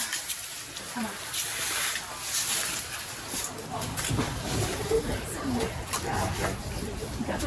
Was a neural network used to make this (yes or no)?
yes